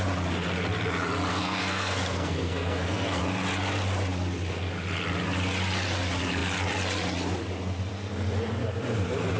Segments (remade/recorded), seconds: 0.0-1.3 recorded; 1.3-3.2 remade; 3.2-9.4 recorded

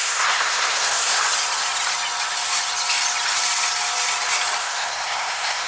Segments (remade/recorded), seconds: 0.0-1.2 remade; 1.2-4.6 recorded; 4.6-5.7 remade

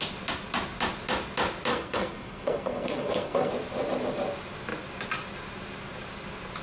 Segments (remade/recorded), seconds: 0.0-1.7 recorded; 1.7-3.5 remade; 3.5-6.6 recorded

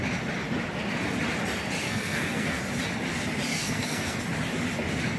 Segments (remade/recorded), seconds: 0.0-1.8 recorded; 1.8-2.6 remade; 2.6-3.5 recorded; 3.5-4.2 remade; 4.2-5.2 recorded